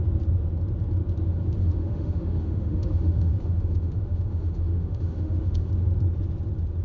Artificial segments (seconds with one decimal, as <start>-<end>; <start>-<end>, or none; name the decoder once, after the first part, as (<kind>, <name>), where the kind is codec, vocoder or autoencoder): 1.6-5.7 (autoencoder, DAC-VAE)